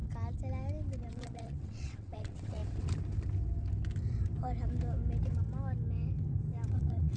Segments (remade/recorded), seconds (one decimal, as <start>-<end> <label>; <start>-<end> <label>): 0.0-1.1 recorded; 1.1-2.6 remade; 2.6-6.7 recorded; 6.7-7.2 remade